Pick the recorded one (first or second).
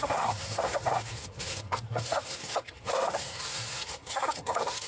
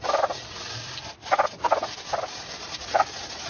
second